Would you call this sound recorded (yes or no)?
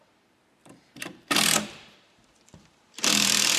no